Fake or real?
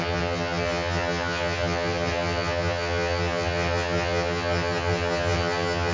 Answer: fake